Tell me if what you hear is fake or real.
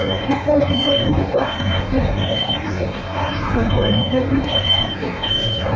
fake